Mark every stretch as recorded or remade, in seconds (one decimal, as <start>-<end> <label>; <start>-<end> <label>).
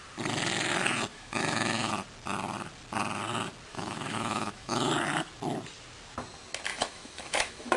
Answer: 0.0-1.1 recorded; 1.1-1.9 remade; 1.9-3.7 recorded; 3.7-4.9 remade; 4.9-6.7 recorded; 6.7-7.8 remade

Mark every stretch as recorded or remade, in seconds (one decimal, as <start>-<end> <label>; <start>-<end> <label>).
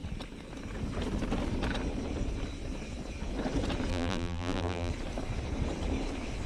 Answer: 0.0-3.9 recorded; 3.9-4.9 remade; 4.9-6.5 recorded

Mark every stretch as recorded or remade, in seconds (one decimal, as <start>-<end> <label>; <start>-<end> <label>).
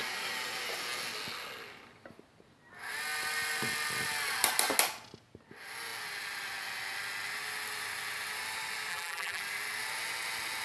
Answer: 0.0-8.9 recorded; 8.9-9.4 remade; 9.4-10.6 recorded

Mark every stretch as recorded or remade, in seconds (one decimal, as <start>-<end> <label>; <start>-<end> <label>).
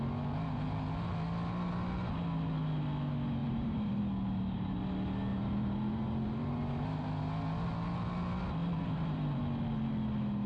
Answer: 0.0-3.4 recorded; 3.4-4.0 remade; 4.0-5.3 recorded; 5.3-7.2 remade; 7.2-8.6 recorded; 8.6-9.4 remade; 9.4-10.5 recorded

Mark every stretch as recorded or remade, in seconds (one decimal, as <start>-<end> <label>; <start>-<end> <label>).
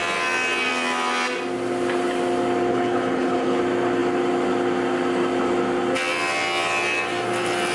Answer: 0.0-2.7 recorded; 2.7-3.6 remade; 3.6-7.7 recorded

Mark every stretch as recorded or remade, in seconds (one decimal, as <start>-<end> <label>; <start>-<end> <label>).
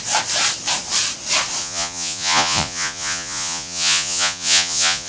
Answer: 0.0-1.6 recorded; 1.6-5.1 remade